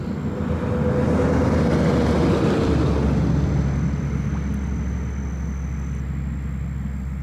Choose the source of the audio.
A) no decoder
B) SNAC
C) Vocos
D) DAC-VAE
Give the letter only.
A